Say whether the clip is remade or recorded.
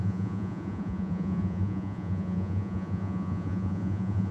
remade